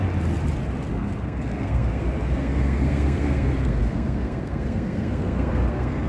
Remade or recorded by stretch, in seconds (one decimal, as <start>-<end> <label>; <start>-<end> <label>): 0.0-0.9 recorded; 0.9-6.1 remade